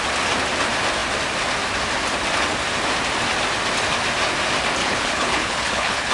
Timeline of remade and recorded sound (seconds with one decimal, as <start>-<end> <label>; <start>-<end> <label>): 0.0-4.8 recorded; 4.8-6.1 remade